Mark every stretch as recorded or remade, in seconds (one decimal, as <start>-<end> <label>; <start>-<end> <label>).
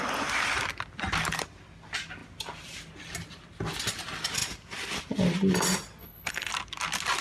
0.0-6.0 recorded; 6.0-6.5 remade; 6.5-7.2 recorded